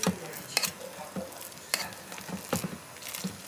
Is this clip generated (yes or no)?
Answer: no